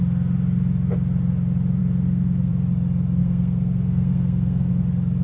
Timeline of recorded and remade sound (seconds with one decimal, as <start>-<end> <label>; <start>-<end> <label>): 0.0-1.8 recorded; 1.8-2.5 remade; 2.5-3.2 recorded; 3.2-4.7 remade; 4.7-5.2 recorded